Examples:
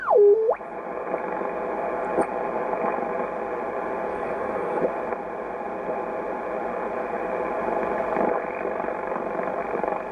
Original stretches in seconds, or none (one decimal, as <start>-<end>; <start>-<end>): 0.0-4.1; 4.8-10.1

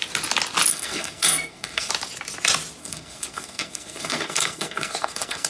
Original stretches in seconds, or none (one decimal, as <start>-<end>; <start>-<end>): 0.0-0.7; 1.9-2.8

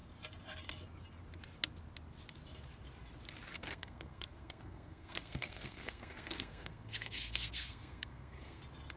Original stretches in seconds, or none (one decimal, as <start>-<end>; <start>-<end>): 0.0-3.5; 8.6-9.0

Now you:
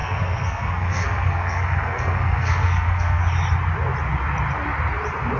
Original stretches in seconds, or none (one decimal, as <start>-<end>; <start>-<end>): 3.2-5.4